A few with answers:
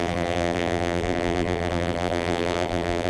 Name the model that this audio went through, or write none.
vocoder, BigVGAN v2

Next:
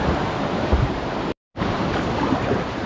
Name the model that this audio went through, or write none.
vocoder, BigVGAN v2